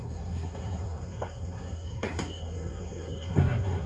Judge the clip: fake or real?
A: fake